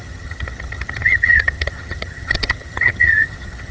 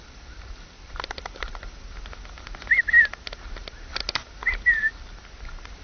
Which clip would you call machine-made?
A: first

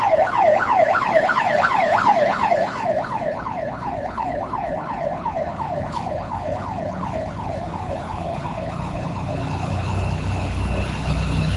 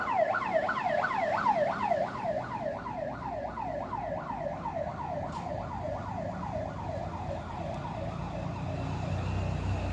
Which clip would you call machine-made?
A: first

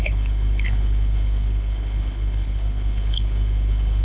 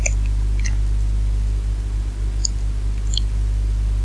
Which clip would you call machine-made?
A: first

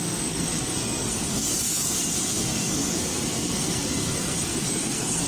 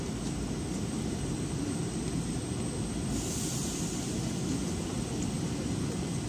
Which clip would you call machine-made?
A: first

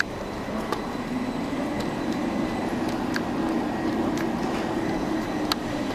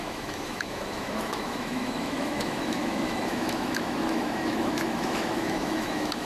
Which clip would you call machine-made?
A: second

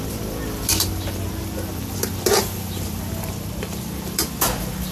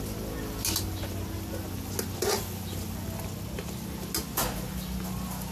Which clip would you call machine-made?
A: first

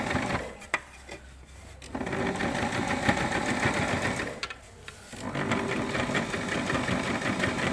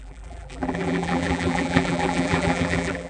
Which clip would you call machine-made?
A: second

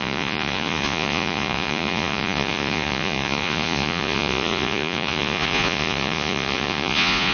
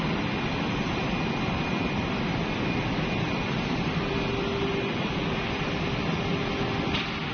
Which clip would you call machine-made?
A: first